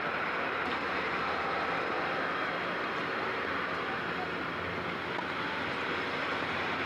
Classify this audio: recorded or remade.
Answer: recorded